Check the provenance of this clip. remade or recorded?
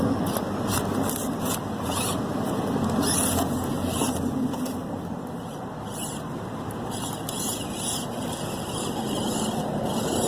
recorded